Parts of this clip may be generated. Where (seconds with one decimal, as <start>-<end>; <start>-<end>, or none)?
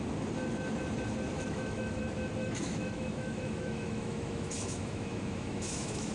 1.3-2.0; 2.4-6.1